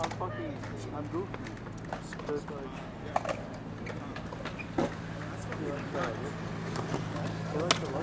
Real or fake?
real